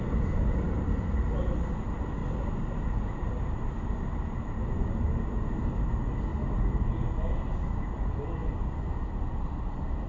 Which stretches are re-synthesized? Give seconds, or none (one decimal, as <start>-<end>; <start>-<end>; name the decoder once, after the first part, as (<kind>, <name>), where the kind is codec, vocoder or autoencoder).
none